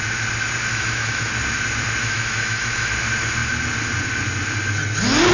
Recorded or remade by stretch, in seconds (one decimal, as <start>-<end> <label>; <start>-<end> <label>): 0.0-0.7 recorded; 0.7-1.3 remade; 1.3-2.0 recorded; 2.0-2.9 remade; 2.9-5.3 recorded